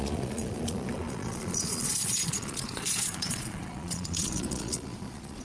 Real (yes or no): no